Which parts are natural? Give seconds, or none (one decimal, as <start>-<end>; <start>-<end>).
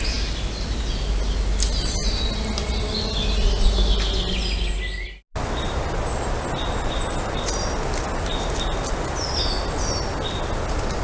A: 0.0-11.0